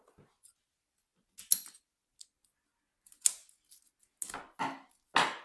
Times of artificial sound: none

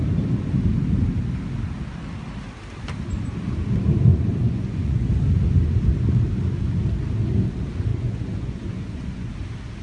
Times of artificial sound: 4.1-5.1 (vocoder, Vocos); 7.9-9.3

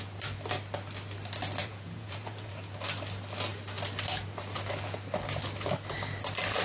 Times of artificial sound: 1.6-2.5 (vocoder, Vocos)

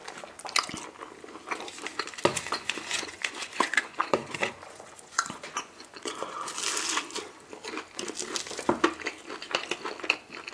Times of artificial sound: 2.3-6.5 (vocoder, Vocos)